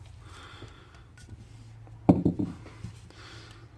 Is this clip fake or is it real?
real